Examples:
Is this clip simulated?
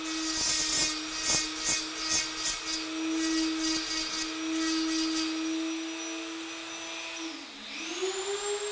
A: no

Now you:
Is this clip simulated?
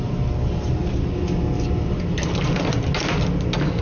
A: no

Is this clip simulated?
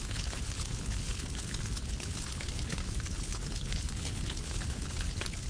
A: yes